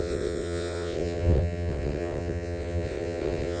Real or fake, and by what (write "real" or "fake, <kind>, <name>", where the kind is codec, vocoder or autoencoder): fake, vocoder, WaveNeXt